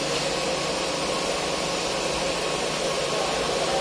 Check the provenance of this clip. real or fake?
real